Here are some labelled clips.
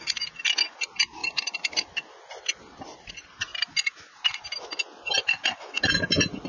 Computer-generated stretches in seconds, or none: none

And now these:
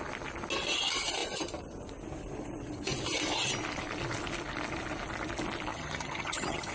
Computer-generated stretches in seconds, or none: 5.7-6.7 (vocoder, HiFi-GAN)

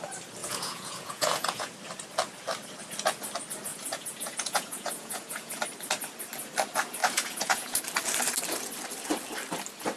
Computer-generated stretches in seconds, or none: 0.4-1.7 (vocoder, Vocos); 3.7-5.6; 7.0-7.8

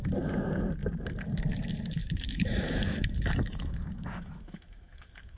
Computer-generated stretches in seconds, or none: 2.0-5.4 (autoencoder, DAC-VAE)

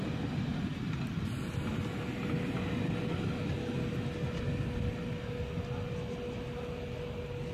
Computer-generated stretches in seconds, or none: 0.7-1.4 (vocoder, BigVGAN v2)

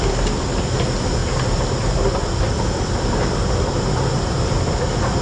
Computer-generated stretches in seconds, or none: none

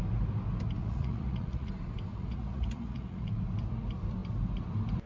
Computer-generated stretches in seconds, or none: 0.8-1.7 (vocoder, Vocos); 2.1-3.3

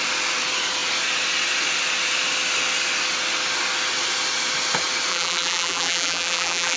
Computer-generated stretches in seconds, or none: 5.1-6.8 (vocoder, BigVGAN v2)